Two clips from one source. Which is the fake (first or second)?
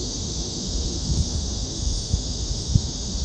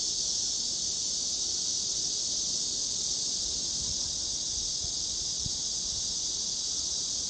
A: first